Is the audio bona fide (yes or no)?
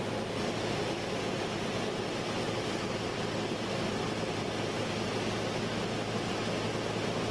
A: yes